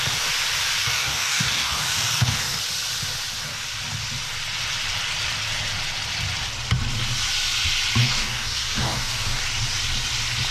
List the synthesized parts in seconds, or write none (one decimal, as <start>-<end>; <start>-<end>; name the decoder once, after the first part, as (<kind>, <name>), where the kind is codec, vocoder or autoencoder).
0.8-2.6 (codec, DAC); 8.0-9.4